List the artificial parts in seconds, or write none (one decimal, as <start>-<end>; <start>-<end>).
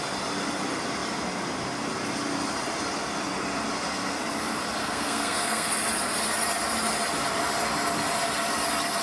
4.8-5.7